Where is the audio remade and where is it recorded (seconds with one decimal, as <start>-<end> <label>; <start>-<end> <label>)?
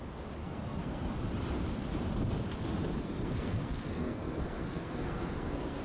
0.0-0.4 recorded; 0.4-1.1 remade; 1.1-3.0 recorded; 3.0-5.8 remade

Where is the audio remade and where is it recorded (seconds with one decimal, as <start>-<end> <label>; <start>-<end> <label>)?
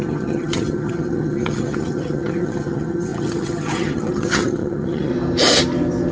0.0-5.1 remade; 5.1-6.1 recorded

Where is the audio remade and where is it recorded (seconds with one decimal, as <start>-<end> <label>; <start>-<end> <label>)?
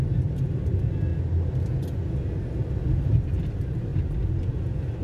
0.0-5.0 recorded